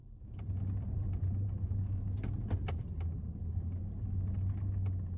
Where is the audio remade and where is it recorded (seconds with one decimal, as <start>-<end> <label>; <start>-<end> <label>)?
0.0-1.1 remade; 1.1-5.2 recorded